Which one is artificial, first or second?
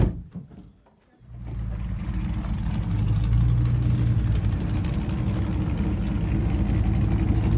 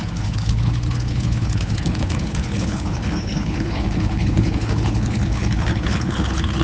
second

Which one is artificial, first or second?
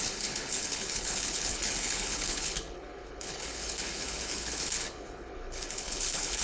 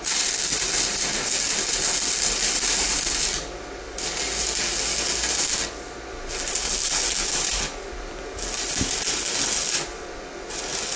first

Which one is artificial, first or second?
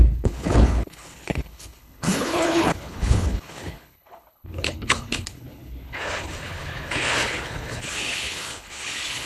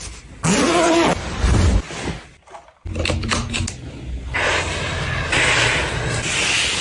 first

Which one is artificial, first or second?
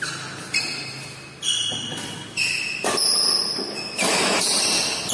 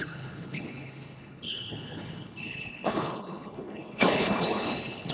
second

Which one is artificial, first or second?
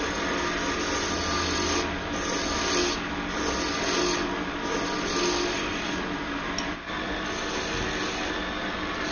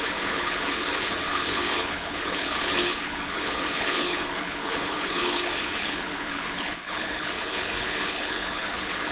second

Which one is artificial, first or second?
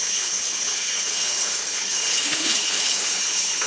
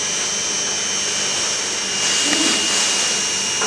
first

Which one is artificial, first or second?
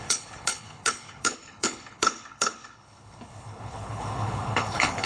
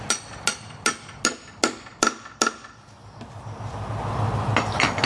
first